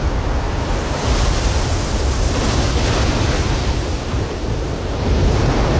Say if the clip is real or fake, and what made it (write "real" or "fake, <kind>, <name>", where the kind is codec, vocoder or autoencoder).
fake, vocoder, BigVGAN v2